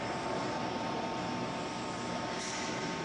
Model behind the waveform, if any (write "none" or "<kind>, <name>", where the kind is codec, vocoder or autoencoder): none